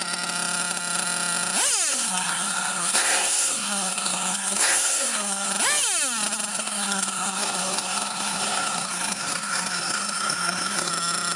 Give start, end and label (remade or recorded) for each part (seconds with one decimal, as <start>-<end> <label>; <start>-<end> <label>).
0.0-1.9 recorded; 1.9-5.5 remade; 5.5-6.5 recorded; 6.5-10.9 remade; 10.9-11.4 recorded